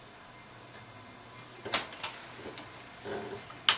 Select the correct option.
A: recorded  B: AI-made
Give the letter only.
A